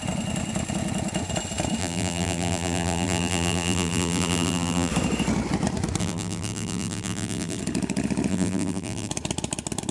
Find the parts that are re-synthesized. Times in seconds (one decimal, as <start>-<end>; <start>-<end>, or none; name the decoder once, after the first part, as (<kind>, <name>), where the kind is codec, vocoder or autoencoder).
1.8-4.9 (vocoder, BigVGAN v2); 6.0-7.6; 8.3-9.1